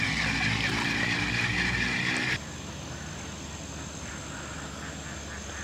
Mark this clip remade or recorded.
recorded